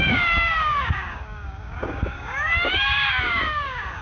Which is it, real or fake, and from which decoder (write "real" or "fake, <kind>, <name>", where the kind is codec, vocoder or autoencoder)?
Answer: fake, codec, DAC